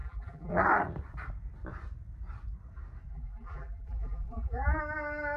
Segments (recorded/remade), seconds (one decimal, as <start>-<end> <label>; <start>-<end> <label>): 0.0-0.5 remade; 0.5-3.1 recorded; 3.1-4.8 remade; 4.8-5.4 recorded